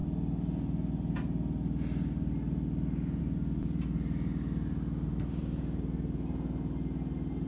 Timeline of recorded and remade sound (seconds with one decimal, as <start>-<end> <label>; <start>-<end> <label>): 0.0-7.5 recorded